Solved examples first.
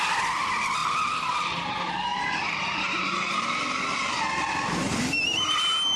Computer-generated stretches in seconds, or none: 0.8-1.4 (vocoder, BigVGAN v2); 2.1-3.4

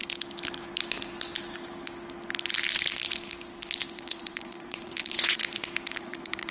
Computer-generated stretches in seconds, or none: 3.9-5.4 (vocoder, Vocos); 6.0-6.5

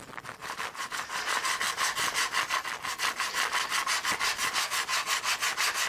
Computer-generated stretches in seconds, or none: 0.4-1.6 (vocoder, BigVGAN v2)

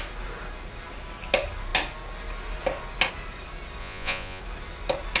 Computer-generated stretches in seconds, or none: 3.8-4.4 (vocoder, Vocos)

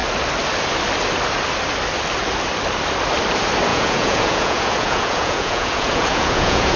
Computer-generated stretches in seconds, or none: 3.7-6.8 (vocoder, Vocos)

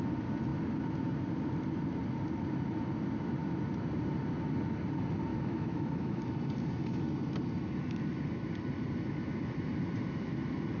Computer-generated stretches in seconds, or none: 5.3-6.2 (autoencoder, DAC-VAE)